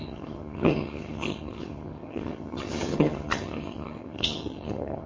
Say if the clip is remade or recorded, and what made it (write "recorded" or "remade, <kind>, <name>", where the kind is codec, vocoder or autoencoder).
remade, vocoder, HiFi-GAN